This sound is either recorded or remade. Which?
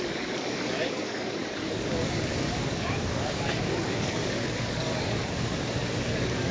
remade